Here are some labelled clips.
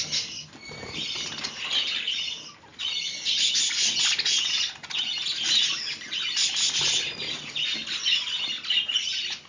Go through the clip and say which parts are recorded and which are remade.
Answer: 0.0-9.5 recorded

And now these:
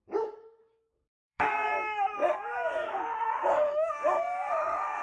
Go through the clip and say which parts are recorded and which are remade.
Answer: 0.0-5.0 remade

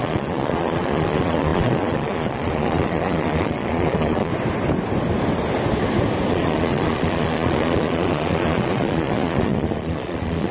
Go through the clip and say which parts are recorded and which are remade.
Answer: 0.0-4.3 remade; 4.3-6.3 recorded; 6.3-10.5 remade

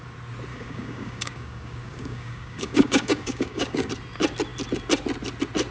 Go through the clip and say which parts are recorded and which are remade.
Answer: 0.0-0.5 recorded; 0.5-3.9 remade; 3.9-5.7 recorded

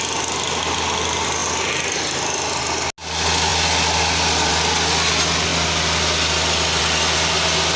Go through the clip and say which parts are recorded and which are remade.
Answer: 0.0-7.8 recorded

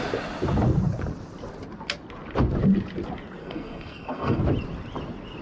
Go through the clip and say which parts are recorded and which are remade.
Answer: 0.0-3.4 recorded; 3.4-4.4 remade; 4.4-5.4 recorded

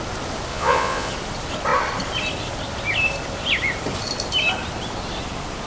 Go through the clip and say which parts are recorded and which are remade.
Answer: 0.0-0.5 recorded; 0.5-1.1 remade; 1.1-5.7 recorded

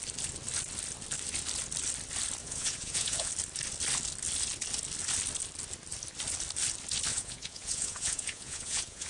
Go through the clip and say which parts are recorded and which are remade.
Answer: 0.0-2.4 recorded; 2.4-3.3 remade; 3.3-7.1 recorded; 7.1-9.1 remade